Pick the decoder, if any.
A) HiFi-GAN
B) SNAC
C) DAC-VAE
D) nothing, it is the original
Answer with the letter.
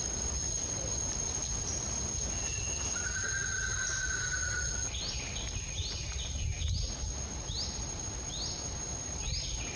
D